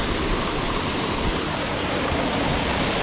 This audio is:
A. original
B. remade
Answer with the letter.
A